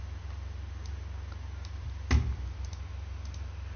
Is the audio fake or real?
real